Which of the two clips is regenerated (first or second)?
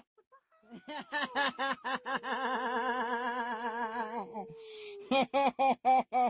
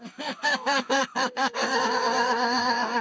second